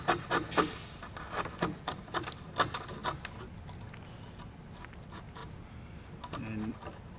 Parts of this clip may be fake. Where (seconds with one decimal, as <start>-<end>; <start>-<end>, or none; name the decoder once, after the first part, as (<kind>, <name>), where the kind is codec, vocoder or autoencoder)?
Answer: none